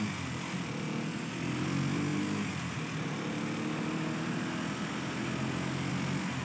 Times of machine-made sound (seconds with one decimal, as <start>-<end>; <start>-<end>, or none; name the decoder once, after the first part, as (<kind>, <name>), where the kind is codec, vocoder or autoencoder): none